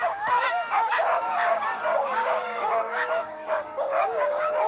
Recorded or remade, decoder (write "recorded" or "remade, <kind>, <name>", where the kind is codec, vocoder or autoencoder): remade, codec, DAC